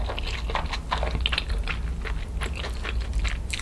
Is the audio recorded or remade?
recorded